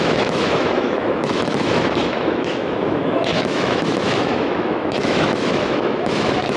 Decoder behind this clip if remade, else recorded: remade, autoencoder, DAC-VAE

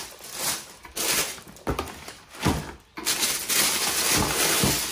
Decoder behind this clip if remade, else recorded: recorded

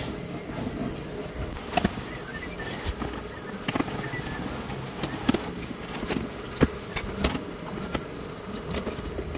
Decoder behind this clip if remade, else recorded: recorded